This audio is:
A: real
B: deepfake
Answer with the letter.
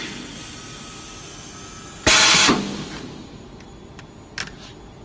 A